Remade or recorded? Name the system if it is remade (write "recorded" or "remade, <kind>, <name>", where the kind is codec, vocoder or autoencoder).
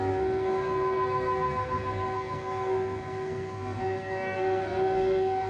remade, codec, SNAC